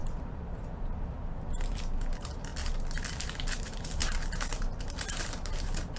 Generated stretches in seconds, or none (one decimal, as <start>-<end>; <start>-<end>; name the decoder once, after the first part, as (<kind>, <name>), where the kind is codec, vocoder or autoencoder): 0.0-2.5 (vocoder, BigVGAN v2); 3.1-6.0